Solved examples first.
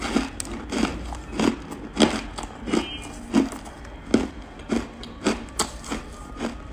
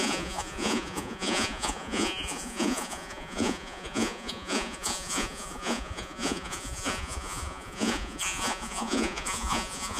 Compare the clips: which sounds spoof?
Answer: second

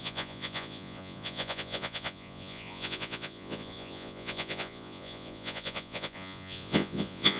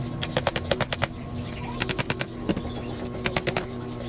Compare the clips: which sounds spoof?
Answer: first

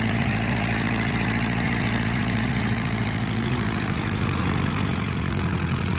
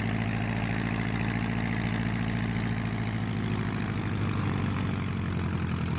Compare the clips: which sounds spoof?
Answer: first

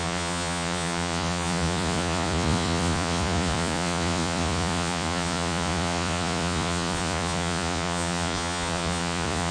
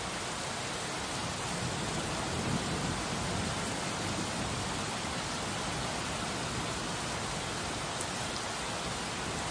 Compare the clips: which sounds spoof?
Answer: first